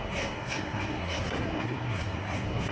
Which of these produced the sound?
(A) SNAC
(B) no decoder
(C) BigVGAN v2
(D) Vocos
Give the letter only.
A